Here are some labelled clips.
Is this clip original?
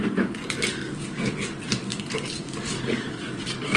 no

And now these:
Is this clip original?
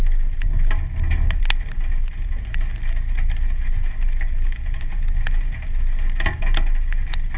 yes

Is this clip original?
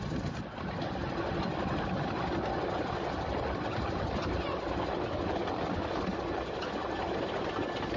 yes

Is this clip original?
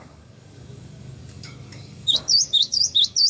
no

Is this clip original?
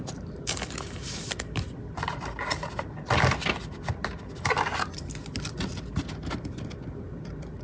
yes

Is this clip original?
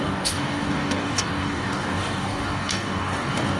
no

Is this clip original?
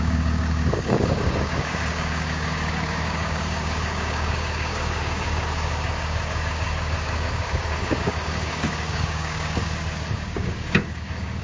no